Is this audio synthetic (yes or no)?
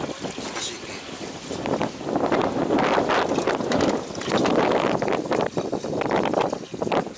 no